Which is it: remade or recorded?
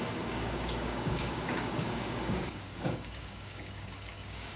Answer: remade